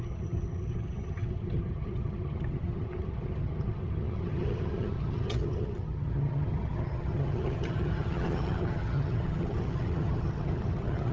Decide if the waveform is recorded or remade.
remade